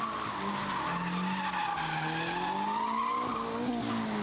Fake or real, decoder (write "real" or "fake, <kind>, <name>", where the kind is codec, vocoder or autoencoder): real